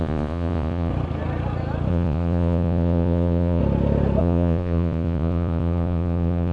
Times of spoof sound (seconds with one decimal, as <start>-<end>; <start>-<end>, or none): 0.0-0.9; 1.9-3.6; 4.2-6.5

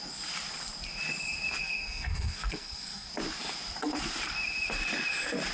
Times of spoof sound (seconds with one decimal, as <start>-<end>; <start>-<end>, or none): 1.6-3.1

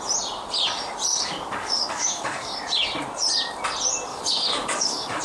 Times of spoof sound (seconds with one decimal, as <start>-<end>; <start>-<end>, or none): 1.1-2.6; 4.1-5.2